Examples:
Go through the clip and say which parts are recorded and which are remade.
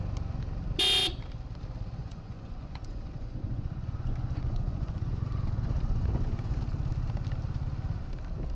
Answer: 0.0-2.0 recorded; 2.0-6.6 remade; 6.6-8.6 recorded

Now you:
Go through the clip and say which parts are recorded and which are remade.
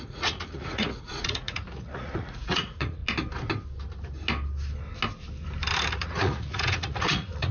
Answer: 0.0-3.0 remade; 3.0-5.9 recorded; 5.9-7.5 remade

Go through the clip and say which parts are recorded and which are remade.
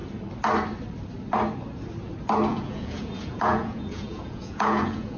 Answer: 0.0-2.5 recorded; 2.5-5.2 remade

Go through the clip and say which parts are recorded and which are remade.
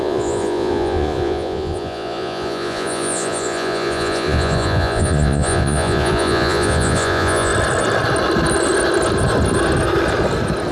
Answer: 0.0-7.5 remade; 7.5-10.7 recorded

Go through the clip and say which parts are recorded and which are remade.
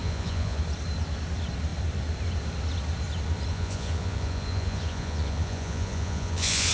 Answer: 0.0-0.6 remade; 0.6-3.5 recorded; 3.5-6.7 remade